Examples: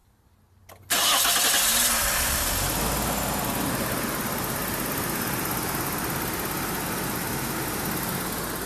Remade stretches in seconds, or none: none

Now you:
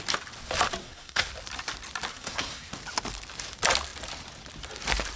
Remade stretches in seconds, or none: 0.8-1.3; 2.1-2.7

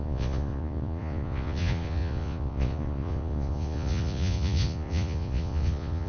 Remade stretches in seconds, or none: 0.0-6.1

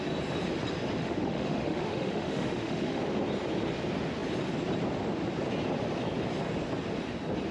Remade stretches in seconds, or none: 1.0-3.0

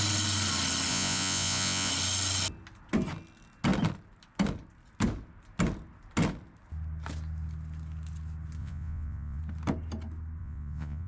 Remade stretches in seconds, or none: 0.9-1.9; 8.6-9.4; 10.4-11.1